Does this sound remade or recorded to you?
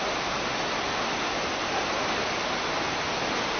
recorded